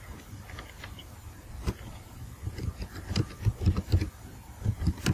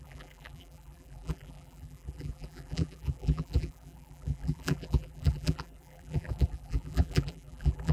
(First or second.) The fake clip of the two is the second